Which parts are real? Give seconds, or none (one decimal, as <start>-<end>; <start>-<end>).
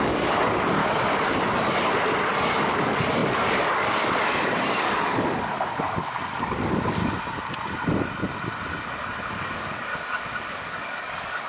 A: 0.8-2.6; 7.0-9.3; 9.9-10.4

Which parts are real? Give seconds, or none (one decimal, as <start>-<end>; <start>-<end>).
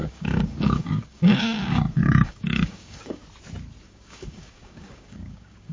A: 3.2-3.8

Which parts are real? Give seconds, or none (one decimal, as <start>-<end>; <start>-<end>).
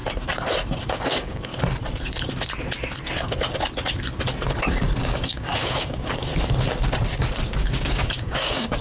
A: 0.0-0.8; 1.5-5.0; 6.3-7.5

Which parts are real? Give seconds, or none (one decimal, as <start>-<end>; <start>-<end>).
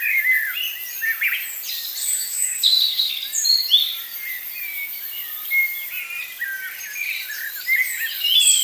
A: 0.0-2.0; 3.1-8.6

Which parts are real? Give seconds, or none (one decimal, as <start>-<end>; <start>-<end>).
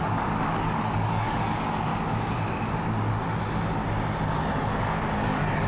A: 1.9-4.3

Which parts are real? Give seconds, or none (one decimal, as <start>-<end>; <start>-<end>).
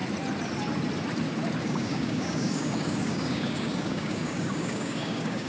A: 0.0-1.6